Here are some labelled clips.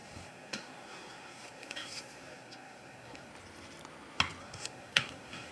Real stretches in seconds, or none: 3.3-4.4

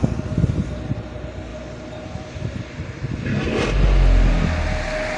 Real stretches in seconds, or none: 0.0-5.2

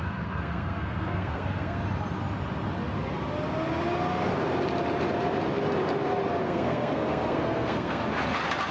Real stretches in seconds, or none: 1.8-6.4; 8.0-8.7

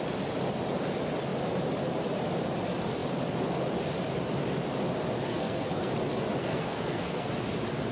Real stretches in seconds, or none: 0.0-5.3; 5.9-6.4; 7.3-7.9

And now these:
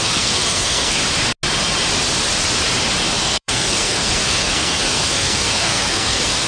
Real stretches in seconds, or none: 1.0-3.2

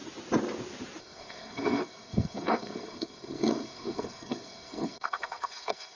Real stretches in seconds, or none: 0.0-1.0